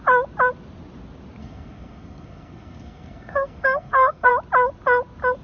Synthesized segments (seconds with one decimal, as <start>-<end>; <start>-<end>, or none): 1.4-4.3